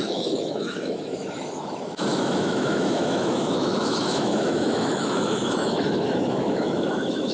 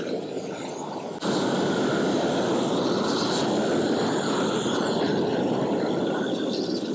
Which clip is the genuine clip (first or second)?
second